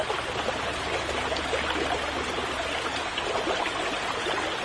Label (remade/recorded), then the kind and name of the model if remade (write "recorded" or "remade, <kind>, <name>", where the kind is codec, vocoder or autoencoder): recorded